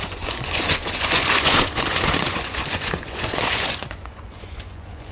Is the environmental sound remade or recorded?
remade